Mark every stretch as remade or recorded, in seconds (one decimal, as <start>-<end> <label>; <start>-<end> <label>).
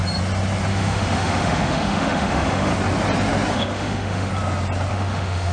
0.0-0.7 recorded; 0.7-2.7 remade; 2.7-3.5 recorded; 3.5-4.3 remade; 4.3-4.9 recorded; 4.9-5.5 remade